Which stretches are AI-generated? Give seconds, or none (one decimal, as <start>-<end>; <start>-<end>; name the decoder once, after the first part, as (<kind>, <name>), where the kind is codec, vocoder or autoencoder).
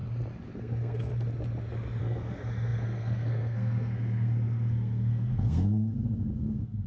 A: 0.6-1.1 (codec, SNAC); 2.0-6.9